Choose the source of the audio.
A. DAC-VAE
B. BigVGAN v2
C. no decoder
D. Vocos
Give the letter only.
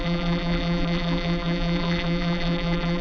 B